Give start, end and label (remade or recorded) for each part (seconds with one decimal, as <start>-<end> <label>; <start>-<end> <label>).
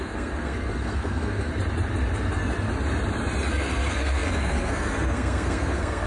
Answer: 0.0-1.5 remade; 1.5-3.5 recorded; 3.5-6.1 remade